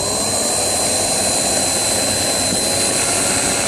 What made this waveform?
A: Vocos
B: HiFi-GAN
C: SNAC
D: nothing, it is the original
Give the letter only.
D